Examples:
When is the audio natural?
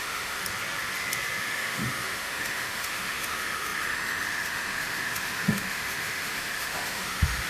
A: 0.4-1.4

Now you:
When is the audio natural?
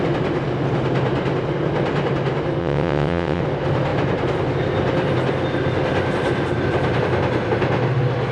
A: 0.0-2.6; 3.4-8.3